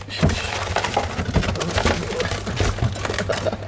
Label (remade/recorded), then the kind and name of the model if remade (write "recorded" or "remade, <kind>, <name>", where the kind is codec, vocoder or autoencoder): recorded